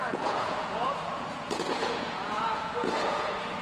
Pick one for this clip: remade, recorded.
remade